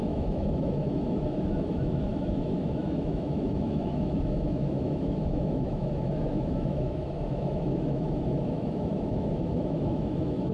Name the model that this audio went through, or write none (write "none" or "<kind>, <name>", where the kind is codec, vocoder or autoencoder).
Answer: autoencoder, DAC-VAE